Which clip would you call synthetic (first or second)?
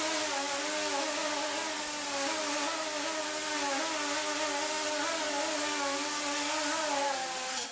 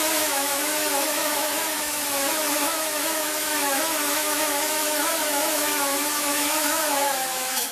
second